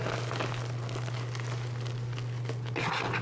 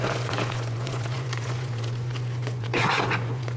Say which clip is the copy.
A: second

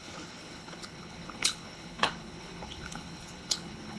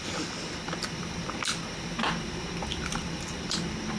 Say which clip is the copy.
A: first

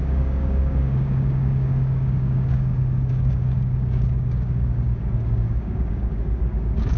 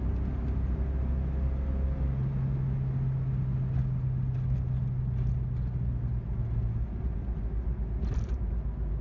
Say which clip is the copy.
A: first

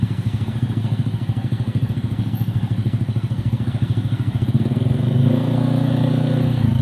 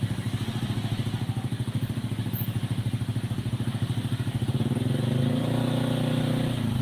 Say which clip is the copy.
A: first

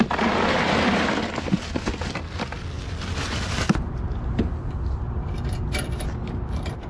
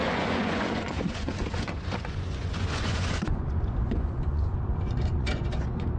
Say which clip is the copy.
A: second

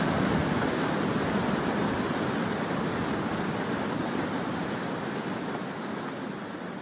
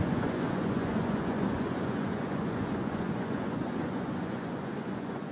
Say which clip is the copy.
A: second